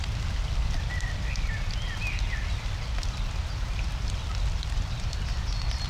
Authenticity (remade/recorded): recorded